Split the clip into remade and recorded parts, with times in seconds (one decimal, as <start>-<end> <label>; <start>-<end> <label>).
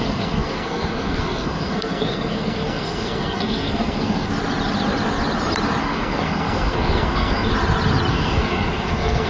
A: 0.0-4.3 remade; 4.3-5.8 recorded; 5.8-7.5 remade; 7.5-8.1 recorded; 8.1-9.3 remade